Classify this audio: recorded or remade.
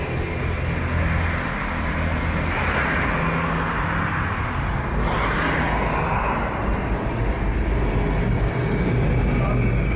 recorded